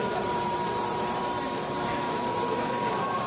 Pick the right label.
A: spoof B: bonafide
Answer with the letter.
A